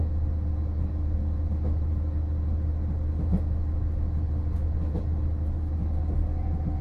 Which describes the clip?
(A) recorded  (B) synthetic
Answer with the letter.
A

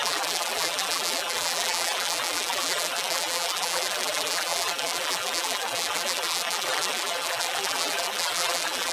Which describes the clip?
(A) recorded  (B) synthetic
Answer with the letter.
B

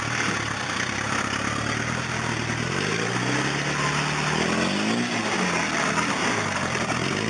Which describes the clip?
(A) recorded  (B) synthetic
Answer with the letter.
A